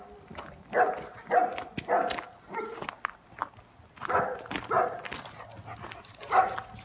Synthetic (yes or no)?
no